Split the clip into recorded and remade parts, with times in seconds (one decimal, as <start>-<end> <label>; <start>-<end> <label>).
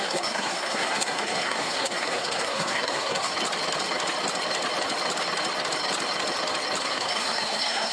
0.0-3.3 remade; 3.3-6.8 recorded; 6.8-7.9 remade